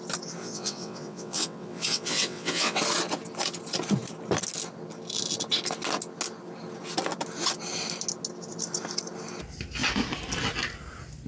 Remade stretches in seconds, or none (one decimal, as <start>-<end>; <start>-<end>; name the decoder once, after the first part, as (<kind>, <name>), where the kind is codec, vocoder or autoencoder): 0.4-2.8 (vocoder, WaveNeXt)